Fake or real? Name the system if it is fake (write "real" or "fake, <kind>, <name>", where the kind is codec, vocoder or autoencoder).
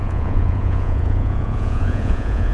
fake, vocoder, Vocos